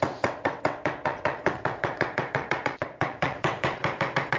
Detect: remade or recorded remade